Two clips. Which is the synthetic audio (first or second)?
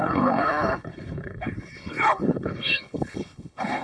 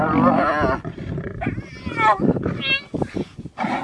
first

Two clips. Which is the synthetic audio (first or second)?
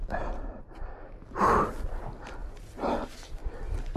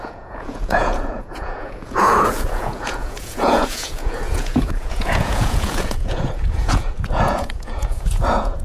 second